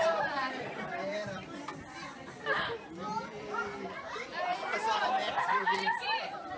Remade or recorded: remade